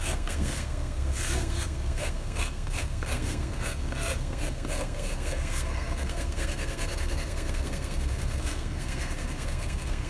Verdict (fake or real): fake